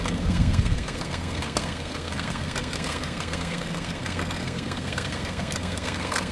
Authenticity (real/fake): fake